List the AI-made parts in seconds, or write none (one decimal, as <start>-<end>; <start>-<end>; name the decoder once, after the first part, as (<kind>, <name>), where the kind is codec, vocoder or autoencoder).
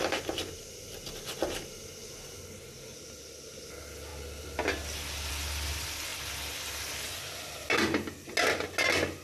none